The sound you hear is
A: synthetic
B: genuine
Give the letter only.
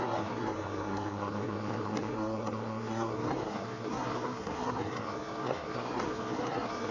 A